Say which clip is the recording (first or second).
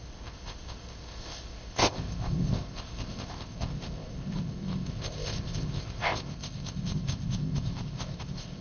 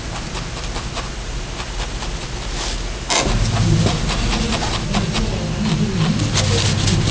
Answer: second